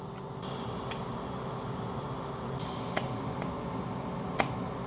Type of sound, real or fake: real